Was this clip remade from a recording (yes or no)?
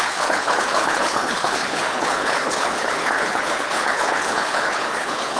yes